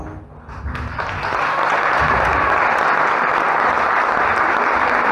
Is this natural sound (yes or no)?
yes